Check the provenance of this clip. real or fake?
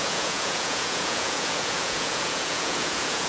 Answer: fake